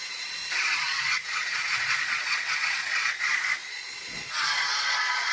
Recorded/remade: remade